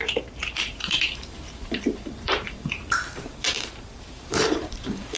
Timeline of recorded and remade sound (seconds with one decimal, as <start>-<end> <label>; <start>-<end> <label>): 0.0-5.2 remade